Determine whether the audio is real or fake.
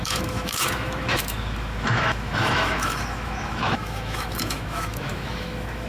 fake